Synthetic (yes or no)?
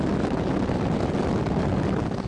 no